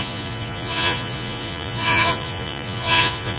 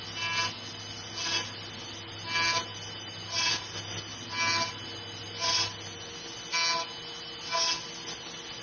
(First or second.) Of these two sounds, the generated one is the first